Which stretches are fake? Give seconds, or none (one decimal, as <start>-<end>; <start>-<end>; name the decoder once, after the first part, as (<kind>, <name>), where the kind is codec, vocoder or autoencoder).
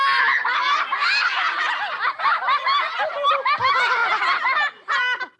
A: none